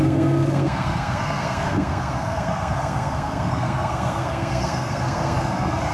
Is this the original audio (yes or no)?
no